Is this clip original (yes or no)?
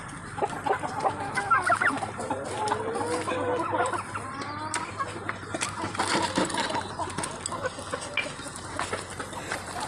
yes